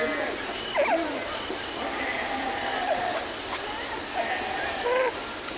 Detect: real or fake real